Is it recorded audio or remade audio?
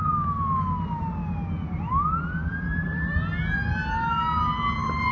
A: recorded